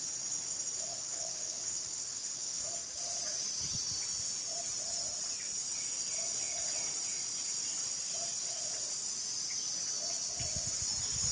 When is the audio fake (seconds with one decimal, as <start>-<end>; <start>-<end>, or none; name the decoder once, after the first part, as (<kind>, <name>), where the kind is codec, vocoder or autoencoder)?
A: 0.9-2.6 (codec, HILCodec)